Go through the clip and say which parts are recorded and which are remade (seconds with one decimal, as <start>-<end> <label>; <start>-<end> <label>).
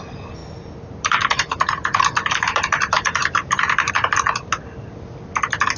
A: 0.0-0.4 recorded; 0.4-3.9 remade; 3.9-5.8 recorded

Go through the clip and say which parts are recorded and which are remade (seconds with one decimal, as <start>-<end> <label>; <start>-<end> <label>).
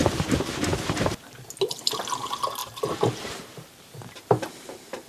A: 0.0-2.6 recorded; 2.6-5.1 remade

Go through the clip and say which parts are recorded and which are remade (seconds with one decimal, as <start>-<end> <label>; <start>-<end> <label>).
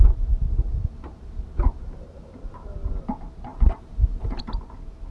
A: 0.0-0.7 recorded; 0.7-2.4 remade; 2.4-3.5 recorded; 3.5-4.4 remade; 4.4-5.1 recorded